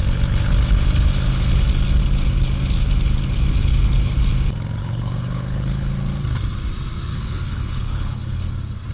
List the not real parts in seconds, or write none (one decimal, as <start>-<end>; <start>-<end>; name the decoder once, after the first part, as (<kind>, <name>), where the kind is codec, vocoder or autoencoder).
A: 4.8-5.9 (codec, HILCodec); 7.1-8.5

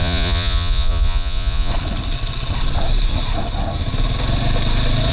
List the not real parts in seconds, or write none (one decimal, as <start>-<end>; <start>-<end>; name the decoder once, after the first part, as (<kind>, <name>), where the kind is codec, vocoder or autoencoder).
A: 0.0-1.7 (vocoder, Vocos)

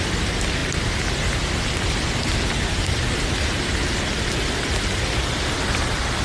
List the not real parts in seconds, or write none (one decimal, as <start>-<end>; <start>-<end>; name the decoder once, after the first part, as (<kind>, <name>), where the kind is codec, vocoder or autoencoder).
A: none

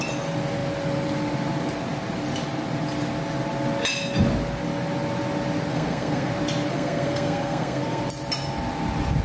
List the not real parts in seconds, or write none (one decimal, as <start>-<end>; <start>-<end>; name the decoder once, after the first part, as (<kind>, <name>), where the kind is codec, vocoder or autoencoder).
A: 5.7-6.3 (codec, SNAC); 6.7-8.0